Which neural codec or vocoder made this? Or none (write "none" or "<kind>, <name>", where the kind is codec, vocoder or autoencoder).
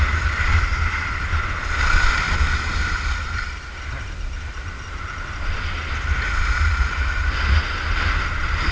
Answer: none